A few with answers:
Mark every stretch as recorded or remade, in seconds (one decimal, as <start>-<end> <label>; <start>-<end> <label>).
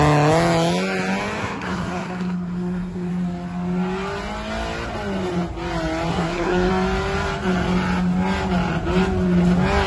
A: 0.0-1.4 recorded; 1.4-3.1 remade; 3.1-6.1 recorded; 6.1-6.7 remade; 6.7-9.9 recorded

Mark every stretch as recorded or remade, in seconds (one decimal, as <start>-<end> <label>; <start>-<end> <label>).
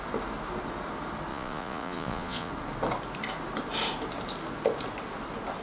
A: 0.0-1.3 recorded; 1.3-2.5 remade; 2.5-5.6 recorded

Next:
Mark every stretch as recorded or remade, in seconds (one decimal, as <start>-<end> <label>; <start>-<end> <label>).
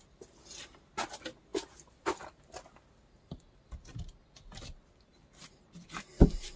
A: 0.0-6.6 recorded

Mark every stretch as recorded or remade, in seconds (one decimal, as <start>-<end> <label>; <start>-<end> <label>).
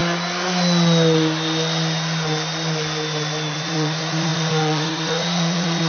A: 0.0-3.5 recorded; 3.5-5.9 remade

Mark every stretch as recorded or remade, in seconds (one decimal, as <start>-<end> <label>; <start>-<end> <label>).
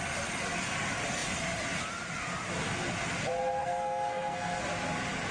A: 0.0-3.6 recorded; 3.6-4.6 remade; 4.6-5.3 recorded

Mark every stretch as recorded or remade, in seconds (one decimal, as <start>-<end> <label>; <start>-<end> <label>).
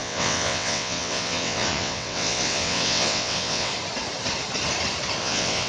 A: 0.0-3.7 remade; 3.7-5.2 recorded; 5.2-5.7 remade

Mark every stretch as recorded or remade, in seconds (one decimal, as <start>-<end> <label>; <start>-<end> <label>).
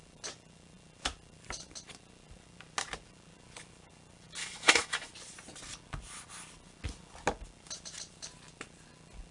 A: 0.0-4.4 recorded; 4.4-5.1 remade; 5.1-9.3 recorded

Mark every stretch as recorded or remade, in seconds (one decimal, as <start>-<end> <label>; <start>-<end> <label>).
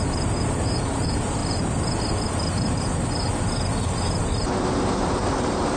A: 0.0-1.4 remade; 1.4-4.9 recorded; 4.9-5.8 remade